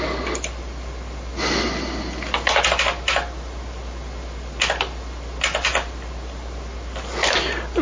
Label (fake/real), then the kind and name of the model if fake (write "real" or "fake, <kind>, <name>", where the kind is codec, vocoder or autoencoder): real